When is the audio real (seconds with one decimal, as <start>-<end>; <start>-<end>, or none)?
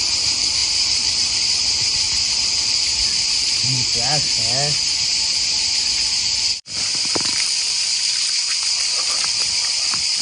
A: 3.9-5.1